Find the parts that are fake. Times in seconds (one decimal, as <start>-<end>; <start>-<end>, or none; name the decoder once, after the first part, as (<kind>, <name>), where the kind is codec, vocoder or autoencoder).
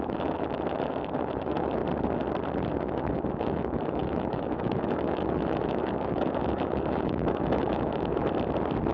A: 0.0-1.8 (autoencoder, DAC-VAE); 2.7-8.2